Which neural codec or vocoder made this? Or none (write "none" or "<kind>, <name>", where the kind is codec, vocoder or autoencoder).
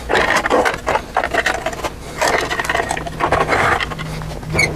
none